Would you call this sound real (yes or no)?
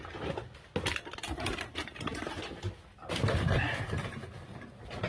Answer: yes